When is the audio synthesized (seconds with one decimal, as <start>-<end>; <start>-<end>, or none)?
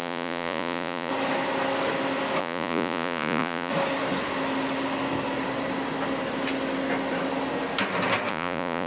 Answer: 0.0-1.1; 2.4-3.7; 8.3-8.9